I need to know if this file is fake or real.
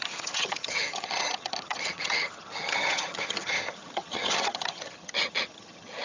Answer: fake